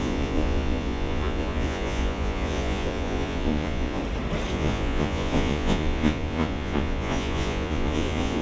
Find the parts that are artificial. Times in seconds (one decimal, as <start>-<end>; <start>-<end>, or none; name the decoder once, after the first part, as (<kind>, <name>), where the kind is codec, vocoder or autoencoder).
0.0-4.0 (vocoder, Vocos); 4.5-8.4